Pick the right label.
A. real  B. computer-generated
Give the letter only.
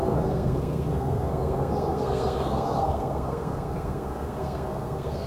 B